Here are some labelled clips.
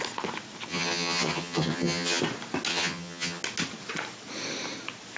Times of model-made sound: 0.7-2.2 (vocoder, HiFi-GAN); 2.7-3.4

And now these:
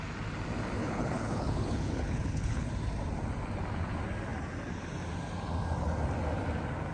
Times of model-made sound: 0.8-2.7 (codec, HILCodec)

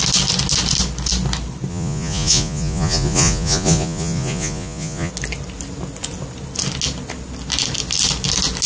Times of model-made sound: 1.7-5.1 (vocoder, Vocos)